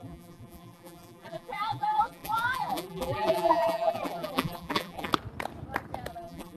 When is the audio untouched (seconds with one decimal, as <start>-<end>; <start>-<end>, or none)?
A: 5.1-6.1